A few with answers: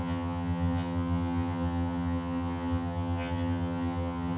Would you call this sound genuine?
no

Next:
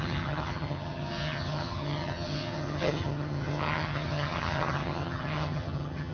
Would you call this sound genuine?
no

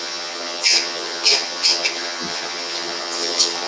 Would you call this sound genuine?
no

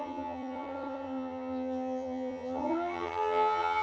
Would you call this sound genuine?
no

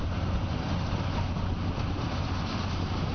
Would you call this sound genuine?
yes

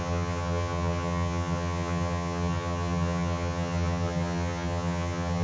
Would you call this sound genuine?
no